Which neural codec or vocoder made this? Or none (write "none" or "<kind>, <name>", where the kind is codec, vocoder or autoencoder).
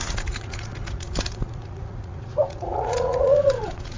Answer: vocoder, Vocos